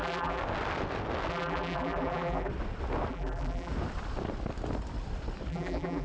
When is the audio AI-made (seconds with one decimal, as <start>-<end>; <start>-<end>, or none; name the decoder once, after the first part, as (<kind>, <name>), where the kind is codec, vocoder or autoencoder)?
0.0-0.4 (vocoder, BigVGAN v2); 1.3-2.5; 3.1-3.7; 5.5-6.0